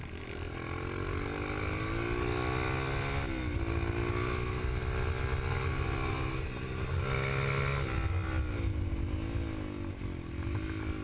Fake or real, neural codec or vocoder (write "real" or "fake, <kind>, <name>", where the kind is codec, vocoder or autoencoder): real